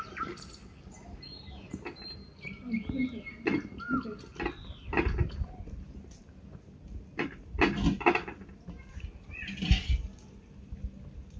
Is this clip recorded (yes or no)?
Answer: yes